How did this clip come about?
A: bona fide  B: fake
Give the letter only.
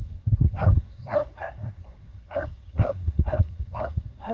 B